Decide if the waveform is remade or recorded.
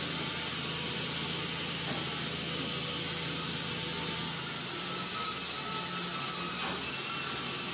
recorded